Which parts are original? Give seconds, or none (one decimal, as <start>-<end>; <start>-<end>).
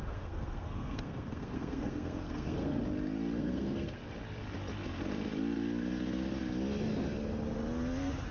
2.8-3.4; 4.0-8.3